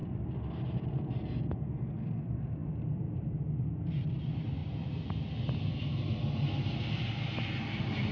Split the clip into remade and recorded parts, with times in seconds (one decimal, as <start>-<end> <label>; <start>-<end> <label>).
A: 0.0-1.5 remade; 1.5-2.6 recorded; 2.6-3.3 remade; 3.3-8.1 recorded

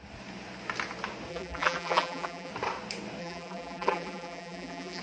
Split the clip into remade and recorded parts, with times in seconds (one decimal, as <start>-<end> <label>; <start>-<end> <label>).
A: 0.0-1.3 recorded; 1.3-2.5 remade; 2.5-3.2 recorded; 3.2-5.0 remade

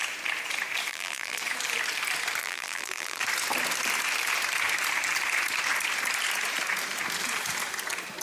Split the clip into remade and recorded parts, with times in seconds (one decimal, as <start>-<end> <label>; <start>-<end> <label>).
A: 0.0-0.9 recorded; 0.9-1.4 remade; 1.4-2.4 recorded; 2.4-3.2 remade; 3.2-8.2 recorded

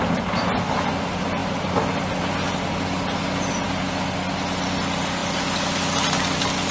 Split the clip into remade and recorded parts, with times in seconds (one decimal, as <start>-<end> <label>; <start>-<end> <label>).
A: 0.0-6.7 recorded

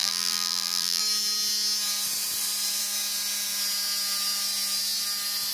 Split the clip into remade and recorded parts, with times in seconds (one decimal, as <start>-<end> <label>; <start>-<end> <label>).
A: 0.0-1.0 remade; 1.0-5.5 recorded

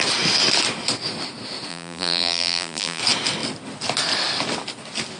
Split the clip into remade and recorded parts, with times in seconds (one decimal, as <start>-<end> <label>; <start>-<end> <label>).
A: 0.0-1.7 recorded; 1.7-3.0 remade; 3.0-5.2 recorded

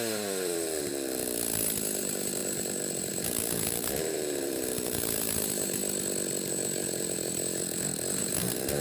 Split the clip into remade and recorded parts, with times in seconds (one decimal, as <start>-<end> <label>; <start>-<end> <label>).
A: 0.0-0.9 remade; 0.9-2.0 recorded; 2.0-5.8 remade; 5.8-6.5 recorded; 6.5-7.6 remade; 7.6-8.2 recorded; 8.2-8.8 remade

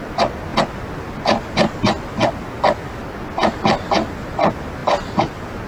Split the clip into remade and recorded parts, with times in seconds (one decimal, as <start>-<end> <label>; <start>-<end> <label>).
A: 0.0-5.7 recorded